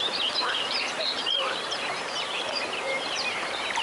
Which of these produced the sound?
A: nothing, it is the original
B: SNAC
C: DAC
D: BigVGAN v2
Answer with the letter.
D